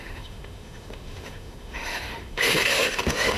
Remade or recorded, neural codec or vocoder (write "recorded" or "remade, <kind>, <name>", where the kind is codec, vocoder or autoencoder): remade, autoencoder, DAC-VAE